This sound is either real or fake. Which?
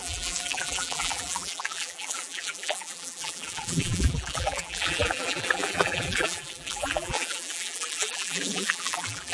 fake